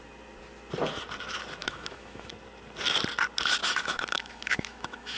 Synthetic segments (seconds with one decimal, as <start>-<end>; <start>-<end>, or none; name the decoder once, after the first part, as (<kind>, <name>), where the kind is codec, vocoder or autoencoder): 1.6-2.3 (autoencoder, DAC-VAE); 3.6-5.2